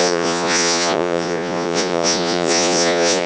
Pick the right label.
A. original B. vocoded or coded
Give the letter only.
B